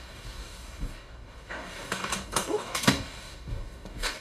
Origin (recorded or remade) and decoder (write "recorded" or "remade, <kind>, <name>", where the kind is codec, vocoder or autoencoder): remade, codec, DAC